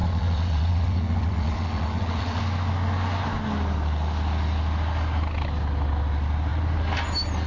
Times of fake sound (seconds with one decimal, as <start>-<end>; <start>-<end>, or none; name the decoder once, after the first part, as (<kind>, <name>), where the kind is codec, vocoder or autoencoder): 0.0-2.4 (vocoder, WaveNeXt)